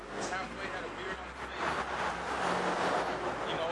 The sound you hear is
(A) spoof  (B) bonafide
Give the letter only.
B